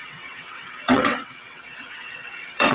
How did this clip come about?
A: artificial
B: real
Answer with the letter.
A